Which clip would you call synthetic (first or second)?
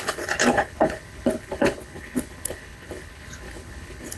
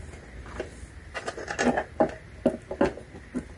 first